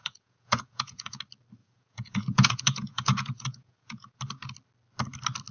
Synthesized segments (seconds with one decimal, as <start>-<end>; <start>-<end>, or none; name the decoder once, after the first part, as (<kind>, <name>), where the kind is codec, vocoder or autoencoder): 0.0-1.2 (vocoder, Vocos); 1.6-4.2